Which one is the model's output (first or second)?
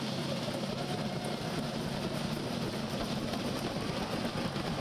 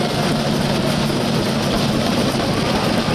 first